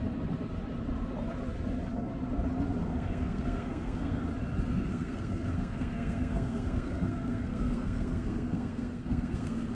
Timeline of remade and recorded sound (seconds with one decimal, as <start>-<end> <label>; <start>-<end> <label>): 0.0-2.8 recorded; 2.8-4.2 remade; 4.2-4.9 recorded; 4.9-9.7 remade

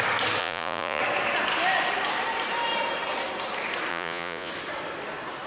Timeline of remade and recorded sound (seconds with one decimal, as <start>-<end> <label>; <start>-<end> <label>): 0.0-0.4 recorded; 0.4-1.0 remade; 1.0-3.9 recorded; 3.9-4.5 remade; 4.5-5.5 recorded

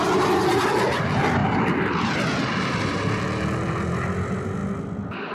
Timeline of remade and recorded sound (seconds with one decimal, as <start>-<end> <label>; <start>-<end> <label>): 0.0-1.4 recorded; 1.4-3.2 remade; 3.2-5.3 recorded